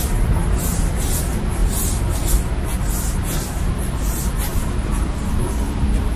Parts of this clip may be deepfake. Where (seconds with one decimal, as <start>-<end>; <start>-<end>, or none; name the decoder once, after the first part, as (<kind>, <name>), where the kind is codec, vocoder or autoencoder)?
none